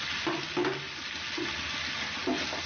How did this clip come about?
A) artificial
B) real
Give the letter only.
B